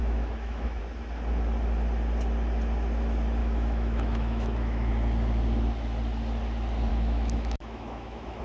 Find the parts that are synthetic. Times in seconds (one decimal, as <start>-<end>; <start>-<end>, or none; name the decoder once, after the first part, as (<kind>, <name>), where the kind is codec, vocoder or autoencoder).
0.0-0.8 (autoencoder, DAC-VAE); 3.4-4.9; 6.9-8.4